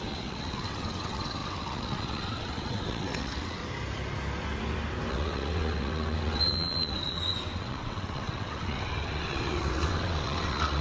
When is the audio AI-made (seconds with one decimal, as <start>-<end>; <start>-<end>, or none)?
0.0-3.6; 5.1-10.8